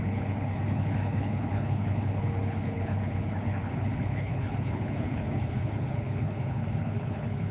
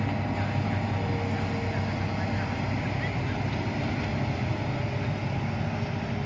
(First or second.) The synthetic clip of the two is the first